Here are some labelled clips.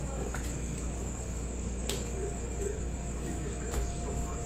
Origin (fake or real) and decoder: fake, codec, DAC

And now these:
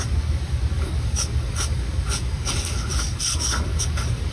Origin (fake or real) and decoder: fake, codec, DAC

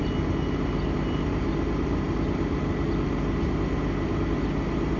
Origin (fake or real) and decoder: real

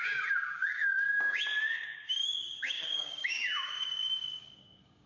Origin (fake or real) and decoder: fake, codec, DAC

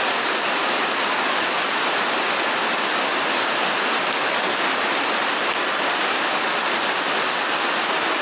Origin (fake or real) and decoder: real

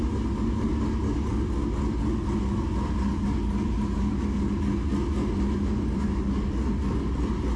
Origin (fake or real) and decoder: real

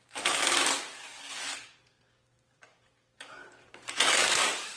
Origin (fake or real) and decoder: fake, codec, DAC